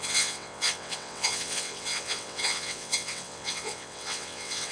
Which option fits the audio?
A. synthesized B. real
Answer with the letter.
A